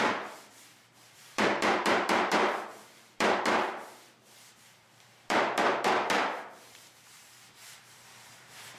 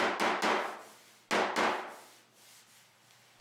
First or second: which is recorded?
second